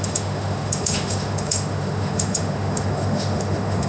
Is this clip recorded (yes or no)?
no